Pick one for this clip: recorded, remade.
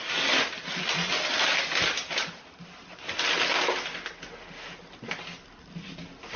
recorded